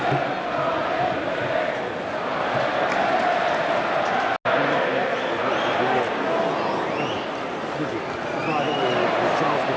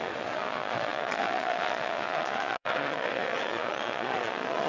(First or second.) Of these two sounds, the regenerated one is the second